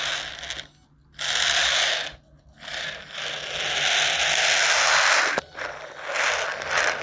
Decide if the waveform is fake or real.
real